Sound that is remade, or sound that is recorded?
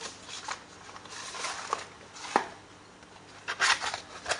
recorded